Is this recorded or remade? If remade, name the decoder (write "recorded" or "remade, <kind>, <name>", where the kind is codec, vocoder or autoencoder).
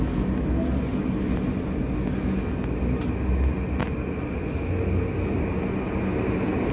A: recorded